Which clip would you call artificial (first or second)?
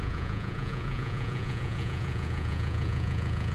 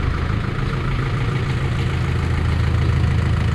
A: first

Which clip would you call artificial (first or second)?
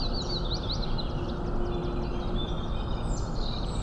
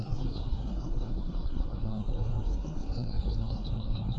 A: second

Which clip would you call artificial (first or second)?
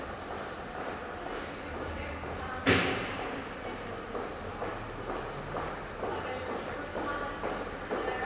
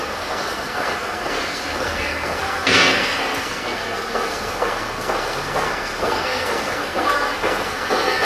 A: second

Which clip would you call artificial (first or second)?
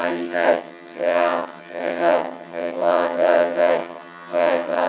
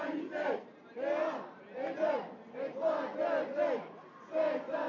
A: first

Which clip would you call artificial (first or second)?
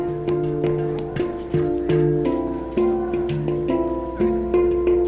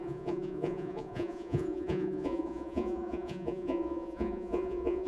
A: second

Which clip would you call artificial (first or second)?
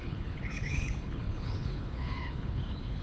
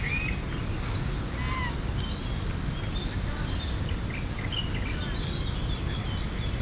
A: first